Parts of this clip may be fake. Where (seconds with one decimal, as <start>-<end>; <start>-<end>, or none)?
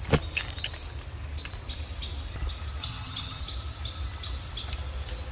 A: 2.8-3.4